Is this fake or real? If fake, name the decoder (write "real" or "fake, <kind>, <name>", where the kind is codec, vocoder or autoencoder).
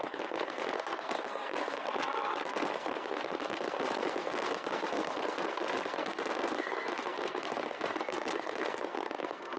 fake, codec, SNAC